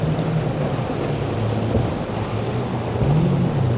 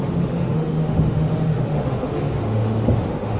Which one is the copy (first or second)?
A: second